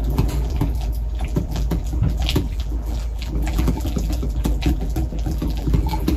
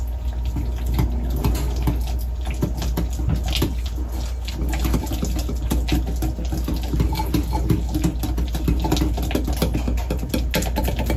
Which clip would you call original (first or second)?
second